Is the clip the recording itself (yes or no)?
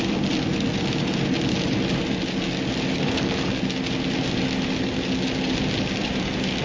yes